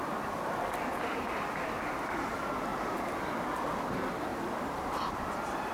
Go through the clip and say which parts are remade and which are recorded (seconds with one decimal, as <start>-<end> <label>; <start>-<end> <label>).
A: 0.0-2.7 recorded; 2.7-3.3 remade; 3.3-4.3 recorded; 4.3-5.1 remade; 5.1-5.7 recorded